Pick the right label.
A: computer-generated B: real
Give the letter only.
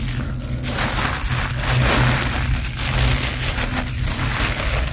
B